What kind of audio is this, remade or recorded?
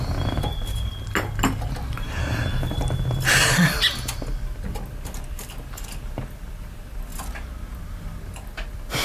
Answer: recorded